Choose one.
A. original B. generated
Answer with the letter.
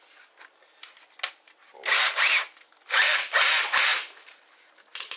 A